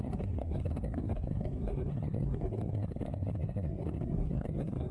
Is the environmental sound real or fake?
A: fake